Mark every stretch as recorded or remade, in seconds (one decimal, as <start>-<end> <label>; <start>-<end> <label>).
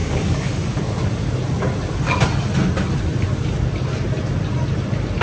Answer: 0.0-1.3 remade; 1.3-5.2 recorded